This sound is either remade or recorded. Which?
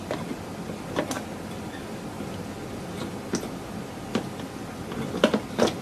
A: recorded